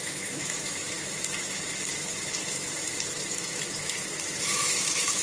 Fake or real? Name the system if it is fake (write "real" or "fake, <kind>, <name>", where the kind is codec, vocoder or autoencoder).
fake, autoencoder, DAC-VAE